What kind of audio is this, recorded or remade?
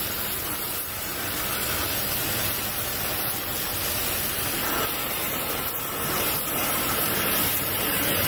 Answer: remade